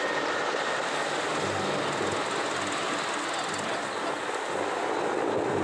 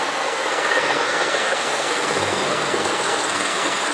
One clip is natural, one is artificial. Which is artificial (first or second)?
second